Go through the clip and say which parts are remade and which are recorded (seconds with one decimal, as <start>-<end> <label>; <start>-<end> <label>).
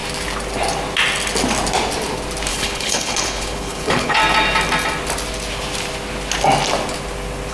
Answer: 0.0-2.5 recorded; 2.5-4.2 remade; 4.2-7.5 recorded